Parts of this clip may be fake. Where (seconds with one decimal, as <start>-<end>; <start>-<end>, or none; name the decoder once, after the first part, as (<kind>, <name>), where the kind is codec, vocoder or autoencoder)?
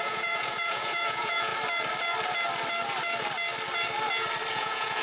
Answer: 0.0-1.5 (vocoder, Vocos); 4.5-5.0